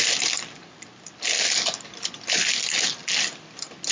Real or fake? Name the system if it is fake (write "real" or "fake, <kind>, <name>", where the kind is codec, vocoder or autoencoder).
real